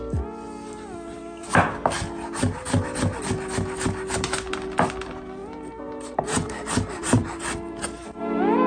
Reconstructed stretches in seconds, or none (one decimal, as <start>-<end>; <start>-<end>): 5.4-8.2